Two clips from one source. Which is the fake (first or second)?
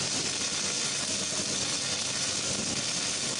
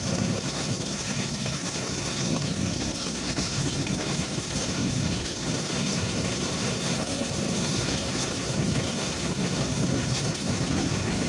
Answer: second